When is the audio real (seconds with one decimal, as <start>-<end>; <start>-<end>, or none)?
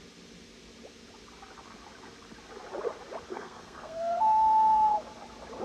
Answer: 0.0-3.3; 4.9-5.6